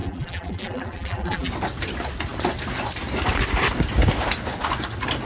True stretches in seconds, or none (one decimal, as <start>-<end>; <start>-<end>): 1.5-5.3